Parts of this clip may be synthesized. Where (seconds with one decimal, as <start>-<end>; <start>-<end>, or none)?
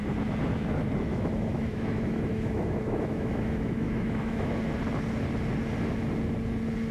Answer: 1.1-4.5